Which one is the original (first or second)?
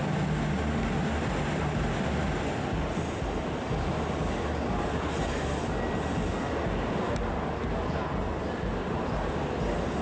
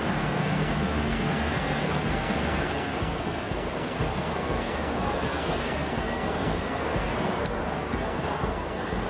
first